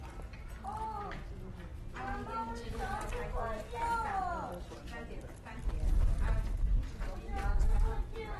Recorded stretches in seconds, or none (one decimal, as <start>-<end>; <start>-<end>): 0.0-8.4